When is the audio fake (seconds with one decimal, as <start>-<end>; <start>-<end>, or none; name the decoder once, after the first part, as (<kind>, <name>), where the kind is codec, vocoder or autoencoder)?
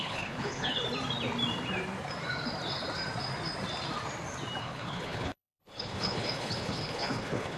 0.0-0.8 (codec, HILCodec); 4.6-7.6